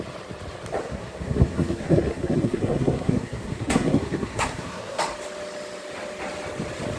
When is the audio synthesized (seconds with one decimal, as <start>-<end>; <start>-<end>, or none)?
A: 0.8-5.0